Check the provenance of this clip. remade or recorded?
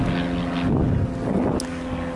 recorded